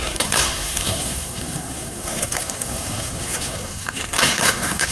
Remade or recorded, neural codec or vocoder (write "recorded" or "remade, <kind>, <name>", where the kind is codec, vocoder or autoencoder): remade, codec, SNAC